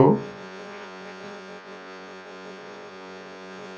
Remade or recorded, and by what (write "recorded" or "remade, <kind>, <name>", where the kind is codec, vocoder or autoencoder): remade, vocoder, Vocos